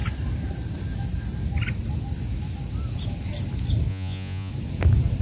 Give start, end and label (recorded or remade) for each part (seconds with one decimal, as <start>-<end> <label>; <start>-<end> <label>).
0.0-3.9 recorded; 3.9-4.5 remade; 4.5-5.2 recorded